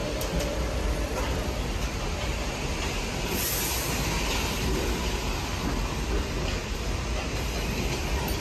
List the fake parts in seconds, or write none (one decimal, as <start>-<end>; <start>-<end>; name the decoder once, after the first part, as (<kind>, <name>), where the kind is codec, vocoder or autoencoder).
none